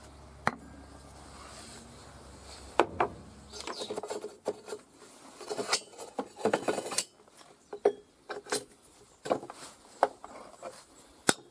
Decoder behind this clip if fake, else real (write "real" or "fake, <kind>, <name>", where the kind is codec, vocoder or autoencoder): real